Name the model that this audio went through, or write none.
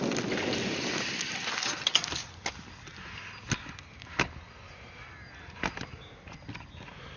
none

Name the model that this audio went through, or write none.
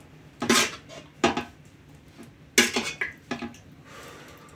none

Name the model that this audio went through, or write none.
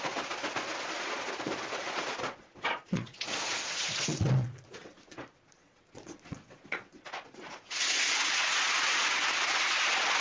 vocoder, Vocos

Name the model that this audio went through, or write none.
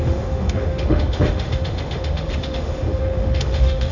autoencoder, DAC-VAE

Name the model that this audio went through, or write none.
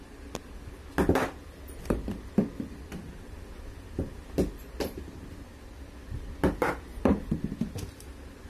none